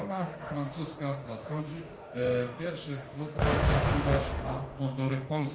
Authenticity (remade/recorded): remade